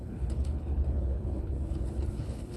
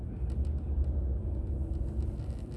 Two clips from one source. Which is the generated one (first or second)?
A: first